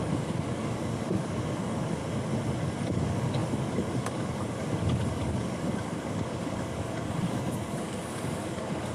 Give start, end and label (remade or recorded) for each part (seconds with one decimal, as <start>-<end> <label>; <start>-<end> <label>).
0.0-2.0 remade; 2.0-2.6 recorded; 2.6-8.9 remade